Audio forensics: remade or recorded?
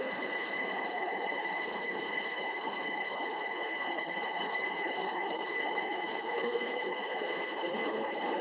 remade